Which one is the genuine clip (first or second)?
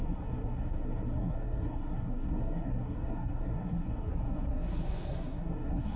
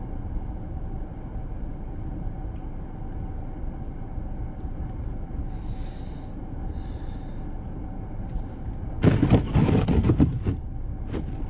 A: second